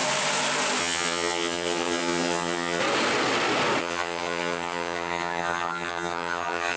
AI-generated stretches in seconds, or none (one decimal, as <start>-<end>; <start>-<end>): 0.8-2.8; 3.8-6.8